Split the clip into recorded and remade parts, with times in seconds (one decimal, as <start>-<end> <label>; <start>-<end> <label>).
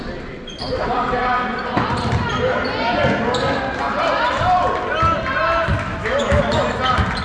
0.0-5.7 recorded; 5.7-6.4 remade; 6.4-7.2 recorded